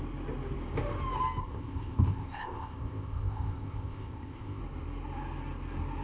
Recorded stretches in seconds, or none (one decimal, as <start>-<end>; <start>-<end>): 0.0-1.4; 4.6-6.0